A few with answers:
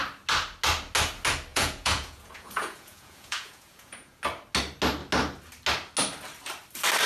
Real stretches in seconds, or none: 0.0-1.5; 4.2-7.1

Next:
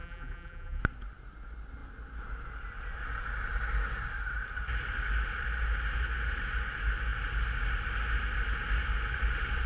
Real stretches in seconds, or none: 0.8-9.7